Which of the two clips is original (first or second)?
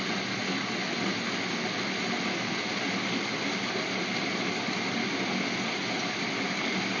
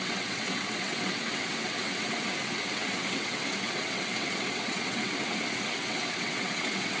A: first